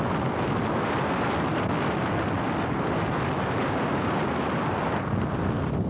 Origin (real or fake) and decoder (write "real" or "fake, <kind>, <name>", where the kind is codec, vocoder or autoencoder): real